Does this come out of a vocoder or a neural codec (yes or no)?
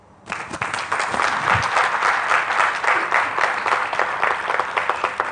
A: no